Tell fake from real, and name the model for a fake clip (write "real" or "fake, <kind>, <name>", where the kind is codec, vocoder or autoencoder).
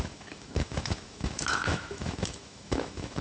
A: fake, autoencoder, DAC-VAE